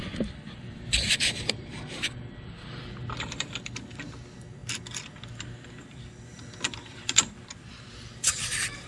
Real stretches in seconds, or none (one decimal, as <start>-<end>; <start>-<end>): 4.6-5.3